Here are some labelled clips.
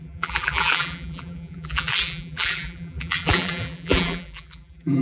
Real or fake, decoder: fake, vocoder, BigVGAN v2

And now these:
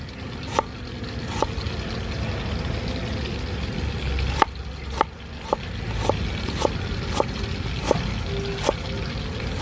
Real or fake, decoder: real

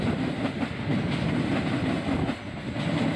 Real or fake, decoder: real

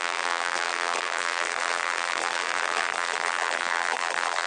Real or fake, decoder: fake, vocoder, BigVGAN v2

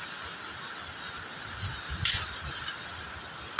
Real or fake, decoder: real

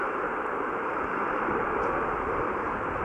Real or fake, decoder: fake, vocoder, BigVGAN v2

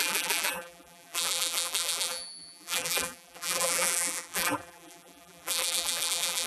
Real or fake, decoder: fake, vocoder, BigVGAN v2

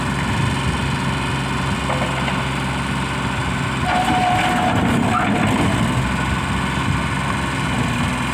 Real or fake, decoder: real